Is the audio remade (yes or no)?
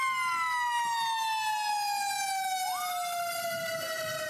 no